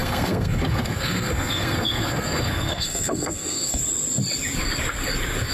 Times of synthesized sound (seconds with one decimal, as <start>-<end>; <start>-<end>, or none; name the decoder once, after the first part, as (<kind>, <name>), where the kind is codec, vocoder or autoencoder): 0.0-3.8 (codec, SNAC)